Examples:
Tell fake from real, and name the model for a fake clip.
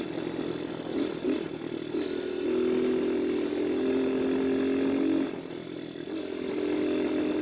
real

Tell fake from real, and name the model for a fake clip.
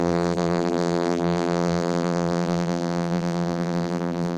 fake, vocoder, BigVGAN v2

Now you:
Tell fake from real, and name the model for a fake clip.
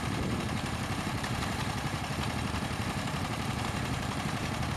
fake, vocoder, BigVGAN v2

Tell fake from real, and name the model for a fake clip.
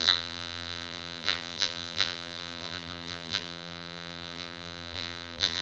fake, vocoder, BigVGAN v2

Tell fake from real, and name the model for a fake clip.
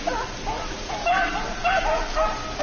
real